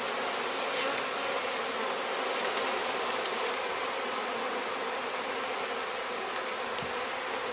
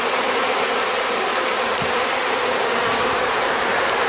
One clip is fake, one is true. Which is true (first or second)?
first